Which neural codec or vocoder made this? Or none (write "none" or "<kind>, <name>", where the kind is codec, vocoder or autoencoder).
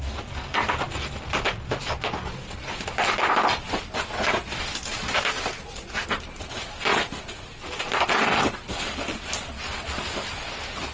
none